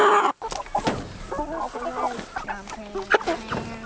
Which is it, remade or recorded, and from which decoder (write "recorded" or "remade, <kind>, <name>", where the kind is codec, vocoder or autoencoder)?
recorded